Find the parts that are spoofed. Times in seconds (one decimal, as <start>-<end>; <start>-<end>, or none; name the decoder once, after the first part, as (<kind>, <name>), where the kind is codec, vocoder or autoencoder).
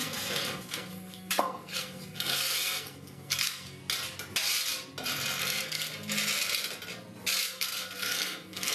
0.0-3.8 (codec, SNAC); 5.4-5.9; 7.4-8.7